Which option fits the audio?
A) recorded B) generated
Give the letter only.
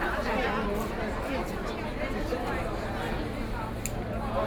A